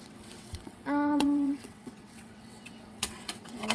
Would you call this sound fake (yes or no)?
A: yes